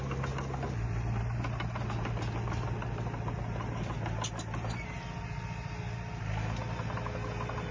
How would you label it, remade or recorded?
recorded